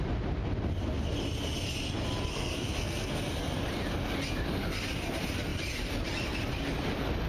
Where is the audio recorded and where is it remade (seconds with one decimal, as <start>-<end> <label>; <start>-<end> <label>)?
0.0-2.3 recorded; 2.3-3.2 remade; 3.2-7.3 recorded